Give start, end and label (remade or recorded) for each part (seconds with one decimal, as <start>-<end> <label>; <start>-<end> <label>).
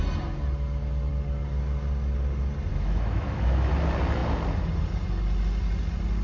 0.0-2.7 recorded; 2.7-3.7 remade; 3.7-6.2 recorded